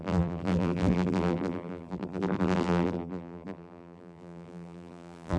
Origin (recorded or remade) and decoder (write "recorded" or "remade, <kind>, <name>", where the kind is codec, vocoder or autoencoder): remade, vocoder, BigVGAN v2